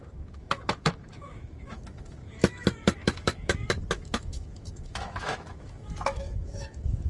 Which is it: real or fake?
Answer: fake